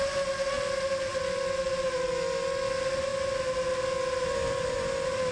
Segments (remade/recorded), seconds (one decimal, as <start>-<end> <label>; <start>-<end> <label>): 0.0-5.3 recorded

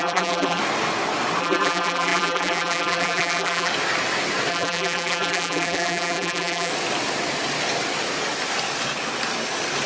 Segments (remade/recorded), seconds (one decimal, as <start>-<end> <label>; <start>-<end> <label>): 0.0-0.6 remade; 0.6-1.4 recorded; 1.4-3.7 remade; 3.7-4.5 recorded; 4.5-6.7 remade; 6.7-9.9 recorded

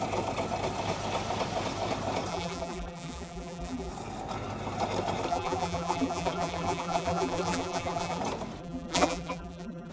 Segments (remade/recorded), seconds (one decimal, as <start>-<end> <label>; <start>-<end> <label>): 0.0-2.3 recorded; 2.3-3.9 remade; 3.9-5.3 recorded; 5.3-8.2 remade; 8.2-8.6 recorded; 8.6-9.9 remade

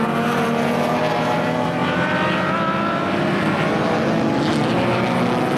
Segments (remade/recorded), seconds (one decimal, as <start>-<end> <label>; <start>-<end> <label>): 0.0-5.6 recorded

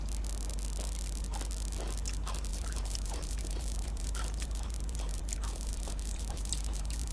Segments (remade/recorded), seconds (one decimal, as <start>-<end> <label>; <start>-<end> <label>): 0.0-2.5 recorded; 2.5-7.1 remade